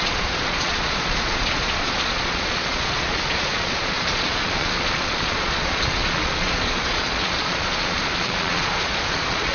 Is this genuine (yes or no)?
no